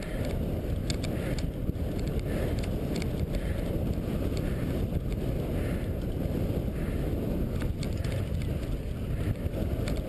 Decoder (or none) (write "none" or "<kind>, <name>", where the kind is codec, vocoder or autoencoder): none